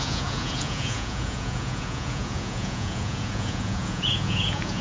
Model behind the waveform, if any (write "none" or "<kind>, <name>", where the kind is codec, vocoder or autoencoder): vocoder, Vocos